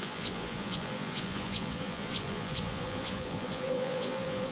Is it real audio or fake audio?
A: fake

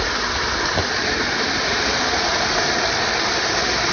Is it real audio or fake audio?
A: real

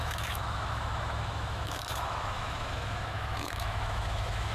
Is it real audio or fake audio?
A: fake